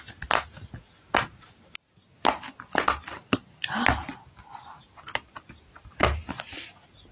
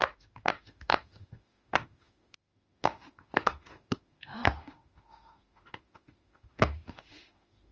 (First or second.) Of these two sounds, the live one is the first